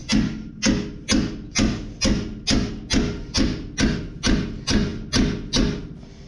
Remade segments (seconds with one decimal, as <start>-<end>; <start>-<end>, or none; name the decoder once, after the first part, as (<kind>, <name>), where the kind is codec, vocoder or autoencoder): none

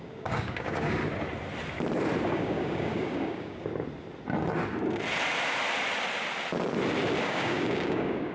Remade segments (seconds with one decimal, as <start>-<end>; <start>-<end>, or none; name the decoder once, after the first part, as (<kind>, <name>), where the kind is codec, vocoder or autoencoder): 0.0-1.0 (codec, DAC); 2.3-3.7; 7.2-8.3

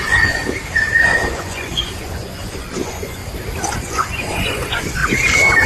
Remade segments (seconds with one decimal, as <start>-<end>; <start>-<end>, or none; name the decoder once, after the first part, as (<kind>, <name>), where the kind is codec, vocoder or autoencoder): 0.0-0.4 (vocoder, Vocos); 1.0-3.2; 3.7-5.0

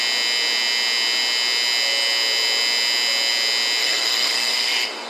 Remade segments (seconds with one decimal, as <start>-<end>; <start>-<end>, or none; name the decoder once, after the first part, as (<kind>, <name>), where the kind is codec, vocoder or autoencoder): 3.8-5.1 (codec, SNAC)